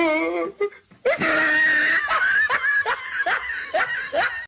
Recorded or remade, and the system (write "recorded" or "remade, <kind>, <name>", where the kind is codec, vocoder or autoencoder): recorded